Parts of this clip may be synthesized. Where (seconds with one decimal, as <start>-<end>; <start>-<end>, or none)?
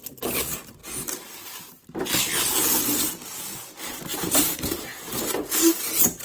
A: none